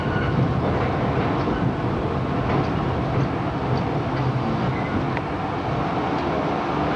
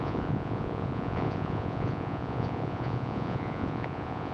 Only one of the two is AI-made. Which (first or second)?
second